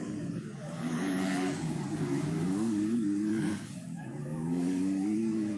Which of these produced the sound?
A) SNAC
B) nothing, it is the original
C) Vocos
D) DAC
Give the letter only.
D